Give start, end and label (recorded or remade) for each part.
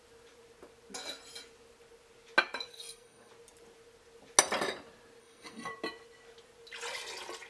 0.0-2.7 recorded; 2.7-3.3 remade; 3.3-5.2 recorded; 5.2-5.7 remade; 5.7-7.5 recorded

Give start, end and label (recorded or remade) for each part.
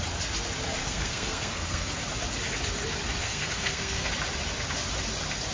0.0-0.8 recorded; 0.8-1.9 remade; 1.9-3.2 recorded; 3.2-4.1 remade; 4.1-5.5 recorded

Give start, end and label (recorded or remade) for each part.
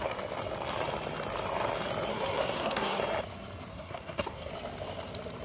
0.0-2.1 recorded; 2.1-3.0 remade; 3.0-3.7 recorded; 3.7-4.5 remade; 4.5-5.4 recorded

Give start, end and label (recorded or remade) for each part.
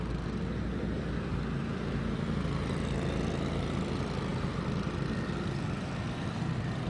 0.0-6.9 recorded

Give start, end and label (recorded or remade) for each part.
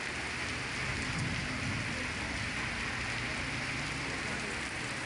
0.0-5.1 recorded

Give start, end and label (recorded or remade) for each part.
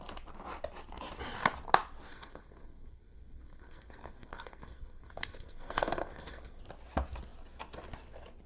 0.0-2.1 recorded; 2.1-6.6 remade; 6.6-8.5 recorded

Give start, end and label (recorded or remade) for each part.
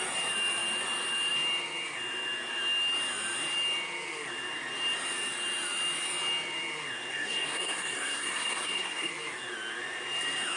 0.0-7.1 recorded; 7.1-9.1 remade; 9.1-10.6 recorded